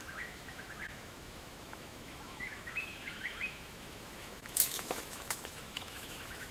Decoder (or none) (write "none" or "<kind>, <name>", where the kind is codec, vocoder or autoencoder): autoencoder, DAC-VAE